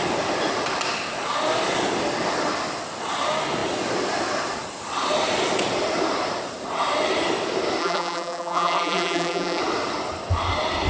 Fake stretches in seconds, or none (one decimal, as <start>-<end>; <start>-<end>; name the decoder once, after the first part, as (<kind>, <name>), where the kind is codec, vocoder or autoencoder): 7.8-9.6 (vocoder, BigVGAN v2)

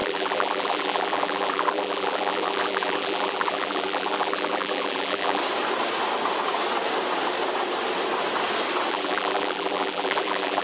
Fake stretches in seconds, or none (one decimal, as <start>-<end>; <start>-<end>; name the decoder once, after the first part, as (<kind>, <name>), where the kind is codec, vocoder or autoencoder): 0.0-5.4 (vocoder, BigVGAN v2); 8.9-10.6

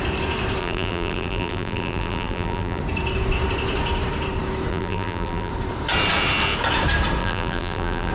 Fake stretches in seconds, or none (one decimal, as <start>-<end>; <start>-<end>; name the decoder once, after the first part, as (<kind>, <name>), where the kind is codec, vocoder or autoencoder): 0.6-2.8 (vocoder, BigVGAN v2); 4.7-5.5; 7.2-8.1

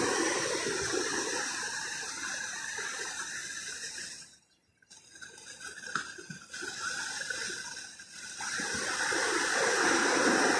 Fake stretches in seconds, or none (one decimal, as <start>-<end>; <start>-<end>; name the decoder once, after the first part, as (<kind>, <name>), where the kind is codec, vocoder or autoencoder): 0.0-3.4 (vocoder, BigVGAN v2); 4.1-4.7; 9.9-10.6

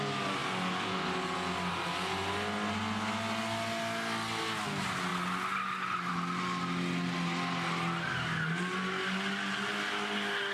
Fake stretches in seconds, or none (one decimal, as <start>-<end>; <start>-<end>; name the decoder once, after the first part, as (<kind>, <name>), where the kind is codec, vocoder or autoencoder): none

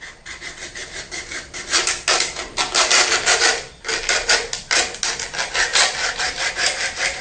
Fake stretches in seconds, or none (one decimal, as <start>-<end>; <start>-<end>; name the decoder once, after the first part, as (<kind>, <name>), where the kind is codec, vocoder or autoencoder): 0.8-1.8 (vocoder, BigVGAN v2); 5.7-6.5

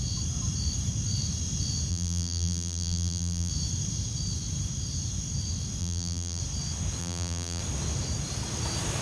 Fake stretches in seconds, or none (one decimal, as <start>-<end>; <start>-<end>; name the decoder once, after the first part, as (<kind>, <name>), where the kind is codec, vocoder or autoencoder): 1.9-3.5 (vocoder, BigVGAN v2); 5.8-6.4; 7.0-7.6